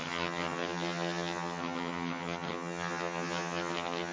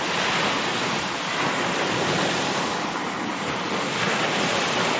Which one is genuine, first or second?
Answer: second